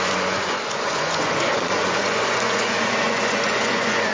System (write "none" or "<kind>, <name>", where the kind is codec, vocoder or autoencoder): vocoder, Vocos